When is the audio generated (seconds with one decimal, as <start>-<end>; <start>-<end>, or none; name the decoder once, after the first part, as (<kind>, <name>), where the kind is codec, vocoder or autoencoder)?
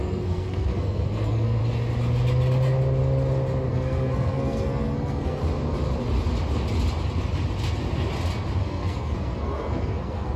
0.0-1.6 (codec, SNAC); 3.7-5.4; 8.6-10.4